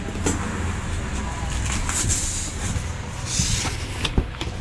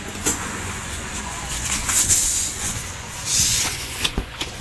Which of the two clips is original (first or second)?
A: first